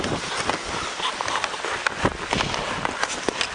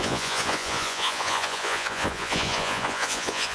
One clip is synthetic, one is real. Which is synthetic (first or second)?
second